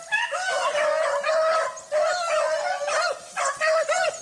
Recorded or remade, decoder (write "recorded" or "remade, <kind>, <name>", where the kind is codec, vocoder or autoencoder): recorded